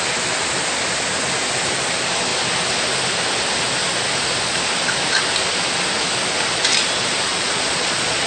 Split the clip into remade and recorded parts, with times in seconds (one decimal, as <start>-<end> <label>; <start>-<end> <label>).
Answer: 0.0-7.3 recorded; 7.3-8.3 remade